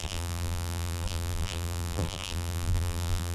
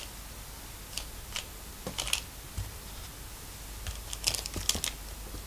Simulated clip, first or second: first